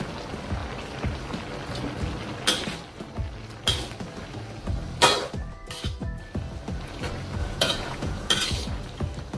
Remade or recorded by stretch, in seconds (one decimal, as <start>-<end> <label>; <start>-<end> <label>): 0.0-7.4 recorded; 7.4-8.3 remade; 8.3-9.4 recorded